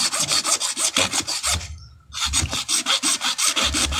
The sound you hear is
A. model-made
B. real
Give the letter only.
B